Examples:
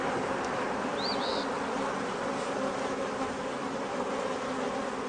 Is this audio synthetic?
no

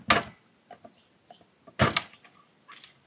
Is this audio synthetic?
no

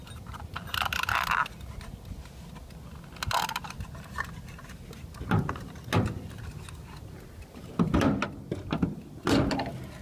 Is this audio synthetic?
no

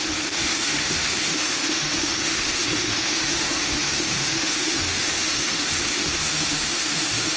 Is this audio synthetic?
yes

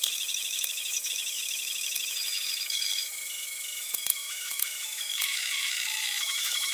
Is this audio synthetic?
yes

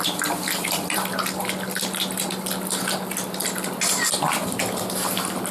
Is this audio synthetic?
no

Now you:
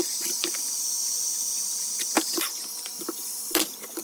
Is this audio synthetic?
no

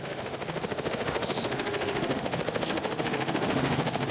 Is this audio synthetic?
yes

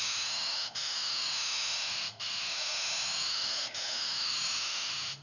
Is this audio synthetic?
yes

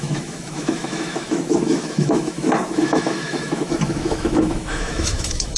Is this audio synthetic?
yes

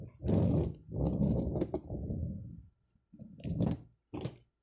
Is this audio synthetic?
no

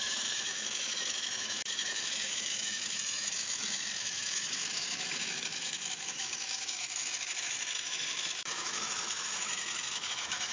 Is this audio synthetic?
yes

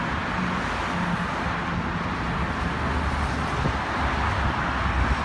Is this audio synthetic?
no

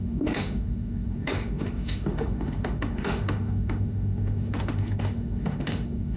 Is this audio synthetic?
yes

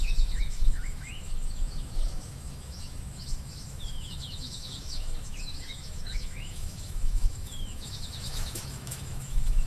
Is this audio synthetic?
yes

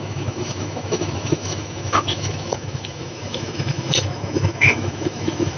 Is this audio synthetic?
yes